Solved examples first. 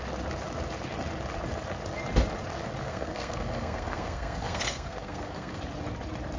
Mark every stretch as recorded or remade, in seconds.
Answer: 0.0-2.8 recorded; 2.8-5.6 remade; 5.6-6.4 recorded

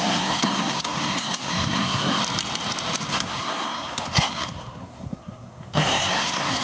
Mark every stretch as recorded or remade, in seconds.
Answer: 0.0-2.2 remade; 2.2-3.1 recorded; 3.1-6.6 remade

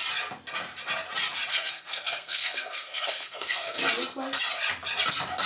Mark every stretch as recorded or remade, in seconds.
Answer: 0.0-1.5 recorded; 1.5-3.8 remade; 3.8-5.5 recorded

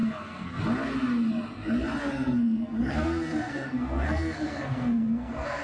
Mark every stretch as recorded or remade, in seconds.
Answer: 0.0-0.6 remade; 0.6-2.0 recorded; 2.0-5.6 remade